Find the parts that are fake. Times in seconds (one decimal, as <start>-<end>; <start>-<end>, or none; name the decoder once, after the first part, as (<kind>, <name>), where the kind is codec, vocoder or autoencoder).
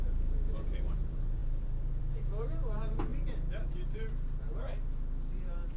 0.0-5.8 (vocoder, BigVGAN v2)